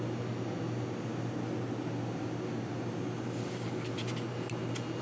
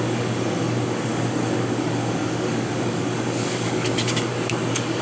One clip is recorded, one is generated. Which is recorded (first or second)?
first